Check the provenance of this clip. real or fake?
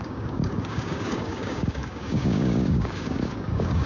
fake